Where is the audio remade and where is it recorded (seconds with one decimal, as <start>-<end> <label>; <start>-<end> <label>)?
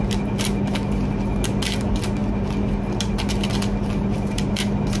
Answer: 0.0-5.0 recorded